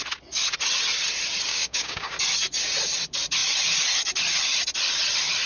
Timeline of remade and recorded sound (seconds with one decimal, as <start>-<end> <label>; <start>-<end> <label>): 0.0-1.5 recorded; 1.5-2.2 remade; 2.2-5.5 recorded